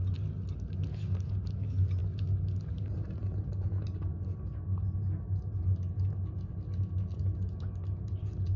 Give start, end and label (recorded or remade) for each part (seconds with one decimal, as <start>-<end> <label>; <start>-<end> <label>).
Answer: 0.0-8.6 recorded